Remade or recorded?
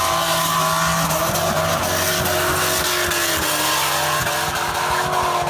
recorded